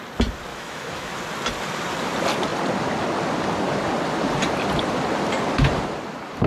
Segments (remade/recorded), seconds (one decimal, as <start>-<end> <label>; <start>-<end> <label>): 0.0-0.5 recorded; 0.5-1.1 remade; 1.1-6.5 recorded